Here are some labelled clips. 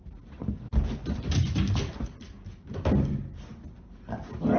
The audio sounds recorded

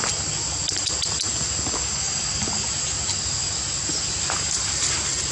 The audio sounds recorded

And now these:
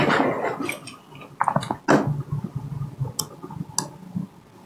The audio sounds recorded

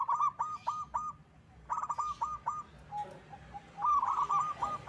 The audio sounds recorded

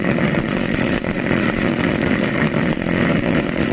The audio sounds remade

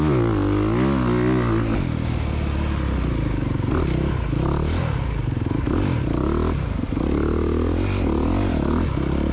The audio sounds recorded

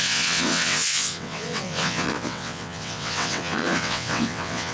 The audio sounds remade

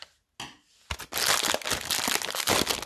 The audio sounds recorded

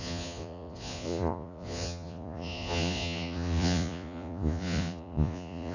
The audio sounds remade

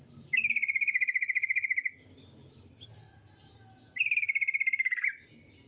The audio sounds recorded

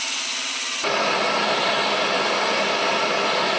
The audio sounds recorded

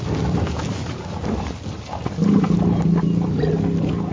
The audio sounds recorded